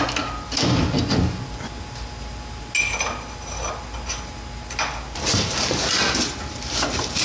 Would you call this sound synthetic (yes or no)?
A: no